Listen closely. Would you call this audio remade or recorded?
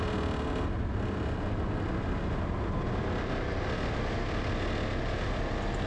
recorded